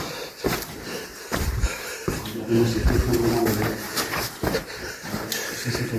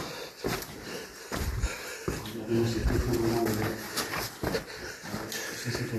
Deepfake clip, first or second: first